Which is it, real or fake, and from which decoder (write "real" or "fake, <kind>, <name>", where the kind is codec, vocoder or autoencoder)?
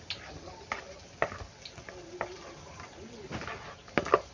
real